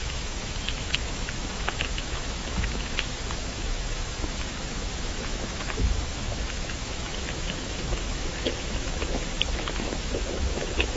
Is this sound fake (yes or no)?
yes